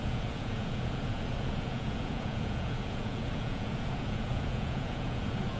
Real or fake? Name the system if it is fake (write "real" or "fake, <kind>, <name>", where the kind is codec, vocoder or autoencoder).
fake, vocoder, Vocos